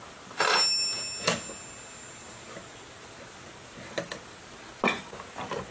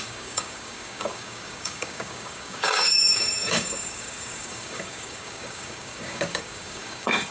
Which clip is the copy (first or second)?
second